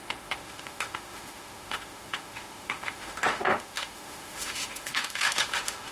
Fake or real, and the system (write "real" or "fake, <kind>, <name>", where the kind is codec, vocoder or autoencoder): fake, autoencoder, DAC-VAE